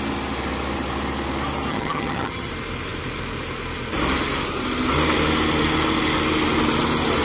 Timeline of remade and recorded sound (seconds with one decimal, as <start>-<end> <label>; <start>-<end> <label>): 0.0-1.7 recorded; 1.7-2.5 remade; 2.5-7.2 recorded